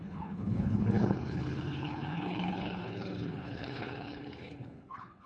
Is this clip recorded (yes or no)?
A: no